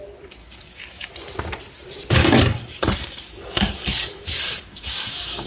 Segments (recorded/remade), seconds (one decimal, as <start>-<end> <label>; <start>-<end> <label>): 0.0-0.4 recorded; 0.4-1.1 remade; 1.1-2.2 recorded; 2.2-5.5 remade